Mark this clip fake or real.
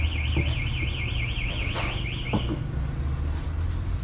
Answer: real